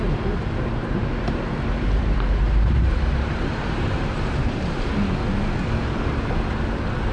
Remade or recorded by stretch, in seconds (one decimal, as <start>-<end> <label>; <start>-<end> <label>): 0.0-0.8 recorded; 0.8-5.0 remade; 5.0-7.1 recorded